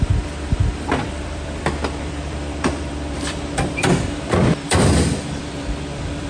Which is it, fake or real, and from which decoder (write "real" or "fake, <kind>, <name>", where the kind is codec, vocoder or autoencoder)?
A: fake, vocoder, BigVGAN v2